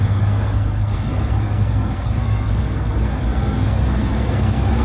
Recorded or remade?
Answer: remade